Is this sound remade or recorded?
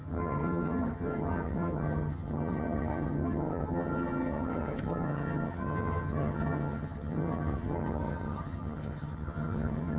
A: remade